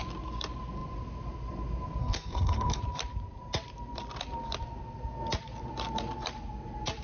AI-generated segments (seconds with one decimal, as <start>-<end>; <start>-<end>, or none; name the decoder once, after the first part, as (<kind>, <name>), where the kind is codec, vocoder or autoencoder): 2.0-2.8 (codec, SNAC)